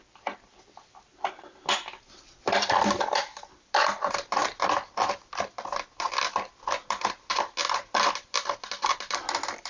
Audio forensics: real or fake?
fake